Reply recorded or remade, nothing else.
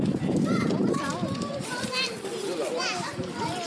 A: recorded